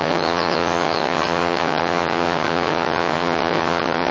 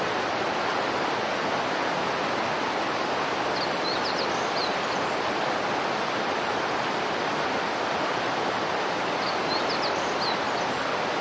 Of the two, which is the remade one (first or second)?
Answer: first